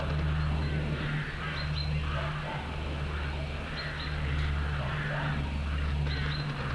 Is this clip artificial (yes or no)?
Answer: no